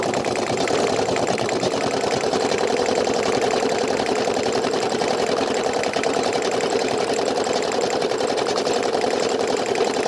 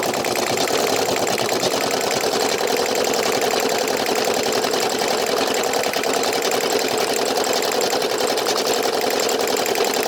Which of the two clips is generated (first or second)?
first